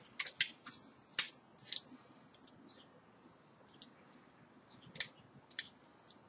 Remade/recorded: recorded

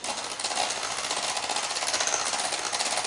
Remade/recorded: recorded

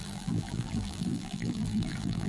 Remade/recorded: remade